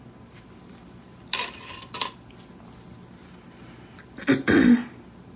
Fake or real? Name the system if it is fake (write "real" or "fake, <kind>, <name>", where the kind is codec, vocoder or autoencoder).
real